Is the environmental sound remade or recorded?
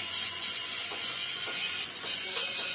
remade